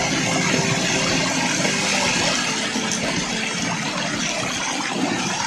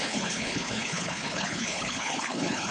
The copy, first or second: second